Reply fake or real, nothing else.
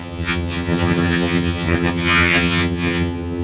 fake